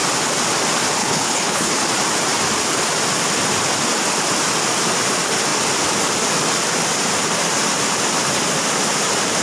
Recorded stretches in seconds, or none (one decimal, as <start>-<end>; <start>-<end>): 0.0-1.0; 1.7-9.4